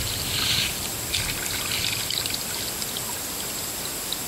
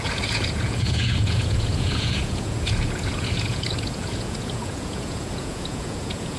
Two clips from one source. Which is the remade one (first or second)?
second